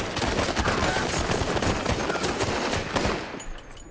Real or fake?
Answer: real